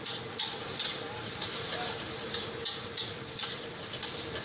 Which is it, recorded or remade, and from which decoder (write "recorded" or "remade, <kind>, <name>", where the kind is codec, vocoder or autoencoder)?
recorded